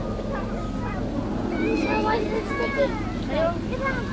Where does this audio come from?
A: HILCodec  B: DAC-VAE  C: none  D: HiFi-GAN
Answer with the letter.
C